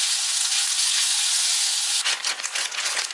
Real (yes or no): no